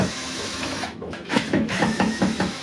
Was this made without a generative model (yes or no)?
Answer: no